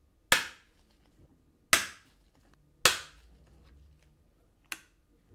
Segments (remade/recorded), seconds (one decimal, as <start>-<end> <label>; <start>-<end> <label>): 0.0-5.3 recorded